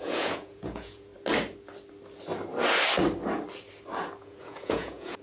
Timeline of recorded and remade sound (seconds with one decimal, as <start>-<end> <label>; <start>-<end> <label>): 0.0-1.1 remade; 1.1-4.2 recorded; 4.2-5.2 remade